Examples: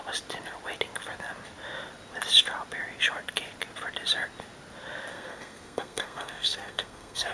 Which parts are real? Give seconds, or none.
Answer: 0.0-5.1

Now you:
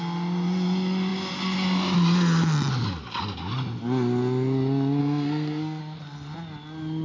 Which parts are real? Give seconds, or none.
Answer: 0.0-5.0; 5.8-7.0

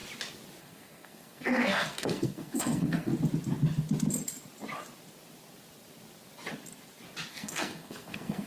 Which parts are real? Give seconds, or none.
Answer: 0.0-0.6; 3.1-7.3

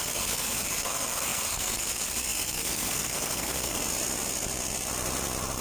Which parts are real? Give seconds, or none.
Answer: 3.8-5.6

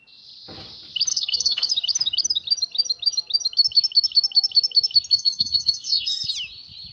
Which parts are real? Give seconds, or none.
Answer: 0.0-1.1; 1.7-5.1; 6.3-6.9

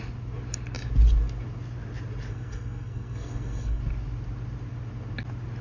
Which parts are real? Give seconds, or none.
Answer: 0.0-2.3; 3.8-5.6